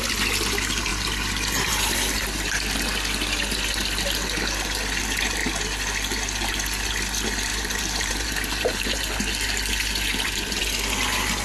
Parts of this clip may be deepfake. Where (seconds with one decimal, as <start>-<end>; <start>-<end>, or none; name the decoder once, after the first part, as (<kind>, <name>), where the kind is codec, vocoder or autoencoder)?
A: 7.5-10.6 (vocoder, BigVGAN v2)